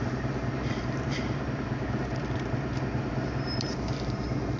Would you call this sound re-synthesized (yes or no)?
yes